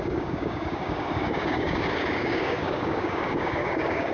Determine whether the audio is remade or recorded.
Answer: remade